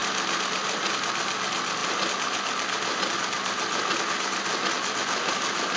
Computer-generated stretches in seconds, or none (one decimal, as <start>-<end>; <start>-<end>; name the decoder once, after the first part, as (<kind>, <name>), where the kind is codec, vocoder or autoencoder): none